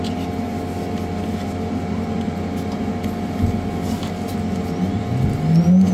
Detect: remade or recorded recorded